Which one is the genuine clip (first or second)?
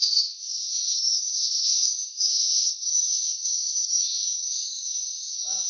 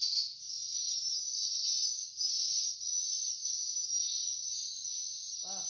second